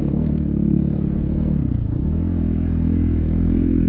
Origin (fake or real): fake